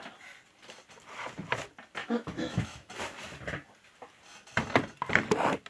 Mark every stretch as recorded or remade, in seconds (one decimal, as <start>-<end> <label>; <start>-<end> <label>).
0.0-2.0 recorded; 2.0-2.9 remade; 2.9-5.7 recorded